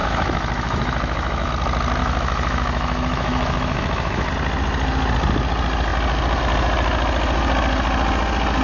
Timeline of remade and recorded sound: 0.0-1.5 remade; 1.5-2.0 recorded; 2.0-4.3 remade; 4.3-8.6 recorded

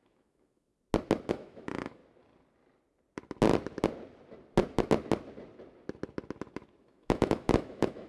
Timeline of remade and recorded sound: 0.0-0.7 remade; 0.7-1.3 recorded; 1.3-2.0 remade; 2.0-6.8 recorded; 6.8-8.1 remade

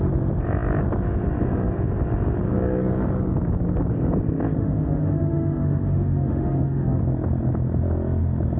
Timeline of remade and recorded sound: 0.0-4.6 recorded; 4.6-7.0 remade; 7.0-8.6 recorded

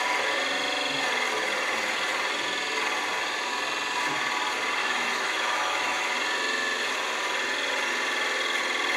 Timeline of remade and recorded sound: 0.0-4.8 recorded; 4.8-6.1 remade; 6.1-9.0 recorded

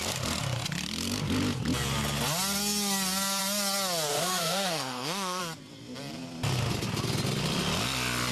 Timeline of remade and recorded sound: 0.0-4.1 recorded; 4.1-5.4 remade; 5.4-8.3 recorded

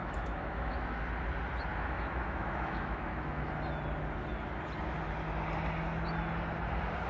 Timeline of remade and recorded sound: 0.0-1.0 remade; 1.0-1.7 recorded; 1.7-3.5 remade; 3.5-7.1 recorded

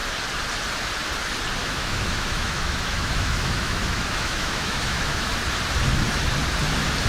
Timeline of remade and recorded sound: 0.0-1.6 recorded; 1.6-5.3 remade; 5.3-7.1 recorded

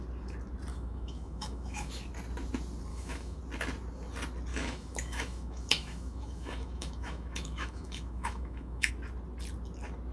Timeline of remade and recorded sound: 0.0-0.7 recorded; 0.7-1.9 remade; 1.9-2.9 recorded; 2.9-3.4 remade; 3.4-4.5 recorded; 4.5-8.9 remade; 8.9-10.1 recorded